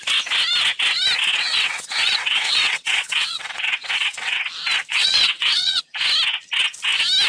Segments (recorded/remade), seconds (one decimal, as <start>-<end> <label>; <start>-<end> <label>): 0.0-1.3 recorded; 1.3-4.4 remade; 4.4-4.9 recorded; 4.9-5.8 remade; 5.8-7.3 recorded